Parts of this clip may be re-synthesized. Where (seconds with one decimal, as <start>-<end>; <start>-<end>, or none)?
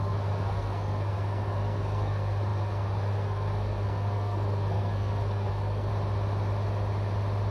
0.0-5.9